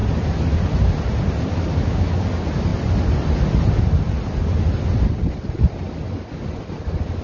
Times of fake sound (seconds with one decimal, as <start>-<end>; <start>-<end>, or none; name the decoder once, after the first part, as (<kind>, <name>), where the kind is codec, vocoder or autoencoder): none